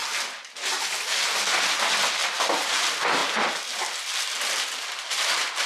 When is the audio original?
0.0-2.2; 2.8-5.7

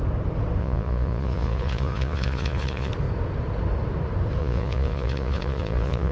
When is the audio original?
0.0-0.6; 2.9-4.4

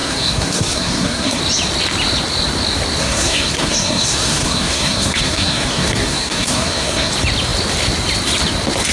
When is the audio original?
1.4-3.0; 7.1-8.9

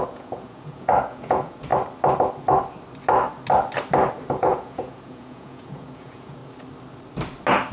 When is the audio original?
1.7-4.3; 6.4-7.7

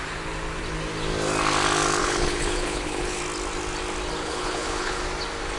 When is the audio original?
0.0-2.0; 3.2-4.2; 5.0-5.6

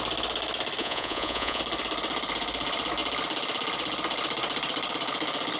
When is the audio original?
0.0-0.8; 1.6-5.6